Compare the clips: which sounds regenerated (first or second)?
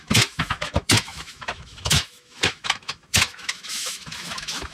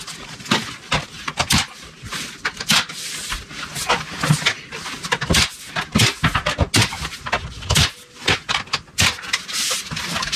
first